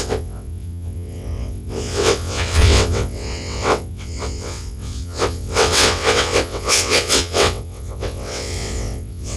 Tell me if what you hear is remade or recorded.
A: remade